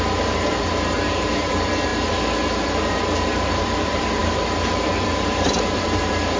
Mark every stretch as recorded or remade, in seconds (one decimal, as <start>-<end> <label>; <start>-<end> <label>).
0.0-1.9 remade; 1.9-2.9 recorded; 2.9-6.4 remade